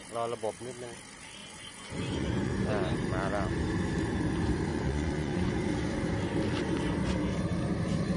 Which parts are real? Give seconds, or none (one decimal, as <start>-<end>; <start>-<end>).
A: 0.0-1.4; 2.5-4.7; 5.5-8.2